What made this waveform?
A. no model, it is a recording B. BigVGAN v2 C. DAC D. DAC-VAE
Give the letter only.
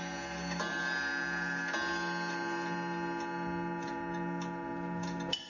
A